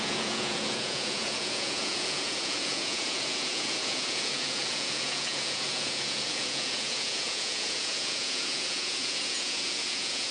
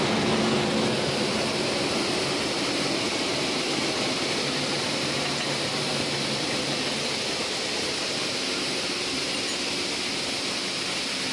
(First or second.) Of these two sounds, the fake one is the first